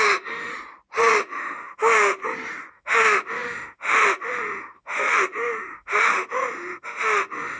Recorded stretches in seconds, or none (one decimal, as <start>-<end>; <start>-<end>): 0.5-1.1; 2.2-2.7